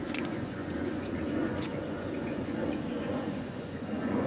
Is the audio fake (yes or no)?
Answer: yes